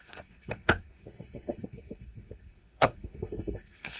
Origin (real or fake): fake